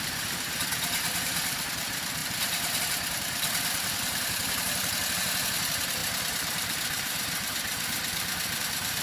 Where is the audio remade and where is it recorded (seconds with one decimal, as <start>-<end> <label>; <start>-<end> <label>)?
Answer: 0.0-9.0 remade